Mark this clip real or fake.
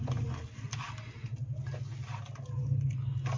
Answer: real